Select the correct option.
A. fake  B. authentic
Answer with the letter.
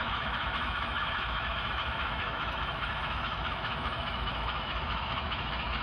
A